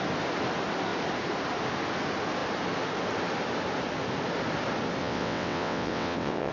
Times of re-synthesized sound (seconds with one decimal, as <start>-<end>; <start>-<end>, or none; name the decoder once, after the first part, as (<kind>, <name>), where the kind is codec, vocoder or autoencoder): 5.0-6.5 (vocoder, WaveNeXt)